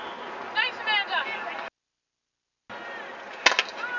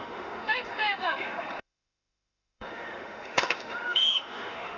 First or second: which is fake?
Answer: second